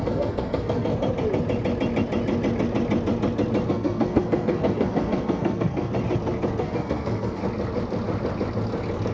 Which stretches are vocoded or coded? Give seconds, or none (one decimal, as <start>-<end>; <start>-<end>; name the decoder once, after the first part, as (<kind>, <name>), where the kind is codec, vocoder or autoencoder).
0.0-0.9 (codec, SNAC); 3.7-5.9; 6.6-7.4